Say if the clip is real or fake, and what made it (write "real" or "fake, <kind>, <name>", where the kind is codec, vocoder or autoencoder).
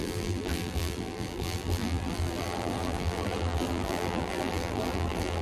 fake, vocoder, BigVGAN v2